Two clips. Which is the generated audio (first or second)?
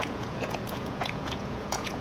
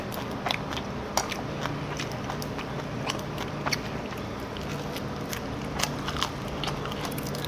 first